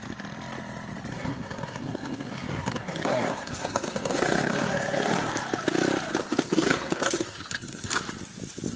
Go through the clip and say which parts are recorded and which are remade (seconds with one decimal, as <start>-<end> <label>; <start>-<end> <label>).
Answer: 0.0-1.1 recorded; 1.1-5.3 remade; 5.3-6.2 recorded; 6.2-7.9 remade; 7.9-8.8 recorded